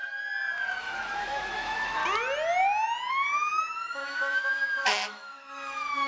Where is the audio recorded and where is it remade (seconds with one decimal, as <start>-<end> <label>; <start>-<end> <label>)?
0.0-0.8 recorded; 0.8-2.0 remade; 2.0-3.1 recorded; 3.1-6.1 remade